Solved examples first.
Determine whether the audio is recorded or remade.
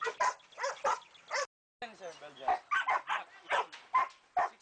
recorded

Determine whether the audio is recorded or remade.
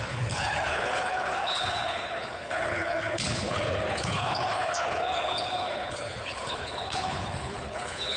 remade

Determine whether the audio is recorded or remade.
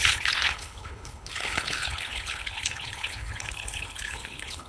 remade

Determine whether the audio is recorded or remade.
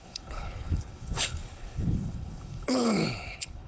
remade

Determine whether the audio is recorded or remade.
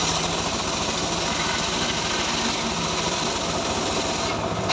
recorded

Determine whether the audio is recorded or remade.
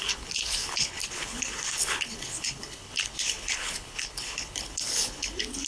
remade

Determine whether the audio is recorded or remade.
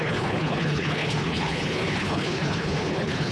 remade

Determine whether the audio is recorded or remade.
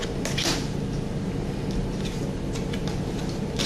recorded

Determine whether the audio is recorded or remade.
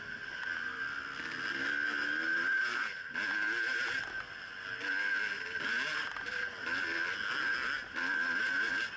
recorded